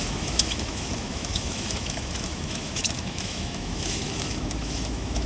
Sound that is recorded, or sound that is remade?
remade